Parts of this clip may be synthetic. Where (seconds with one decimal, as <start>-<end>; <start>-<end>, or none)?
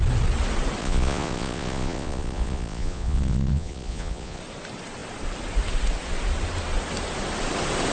0.8-4.4